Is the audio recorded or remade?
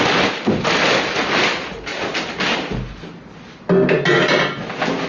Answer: recorded